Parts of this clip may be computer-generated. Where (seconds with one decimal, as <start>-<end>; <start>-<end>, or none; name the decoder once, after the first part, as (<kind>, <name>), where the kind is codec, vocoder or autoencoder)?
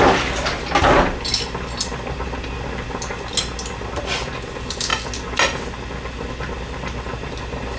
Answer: none